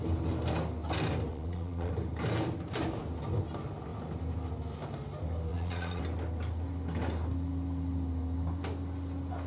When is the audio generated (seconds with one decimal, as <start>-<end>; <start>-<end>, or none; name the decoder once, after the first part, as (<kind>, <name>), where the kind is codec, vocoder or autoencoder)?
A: 1.3-1.9 (vocoder, Vocos); 5.5-6.0